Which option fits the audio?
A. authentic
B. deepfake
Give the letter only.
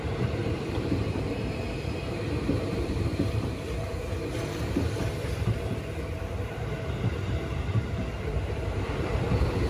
B